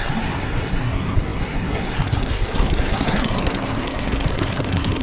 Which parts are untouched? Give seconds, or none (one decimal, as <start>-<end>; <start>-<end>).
none